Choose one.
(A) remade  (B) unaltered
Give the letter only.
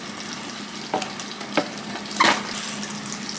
B